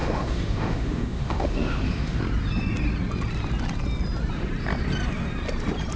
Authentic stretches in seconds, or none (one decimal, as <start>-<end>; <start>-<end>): 2.2-6.0